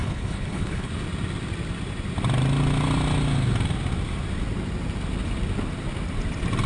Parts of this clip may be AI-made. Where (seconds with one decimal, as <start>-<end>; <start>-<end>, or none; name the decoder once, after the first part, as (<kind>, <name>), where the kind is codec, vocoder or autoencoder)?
0.0-0.9 (codec, HILCodec)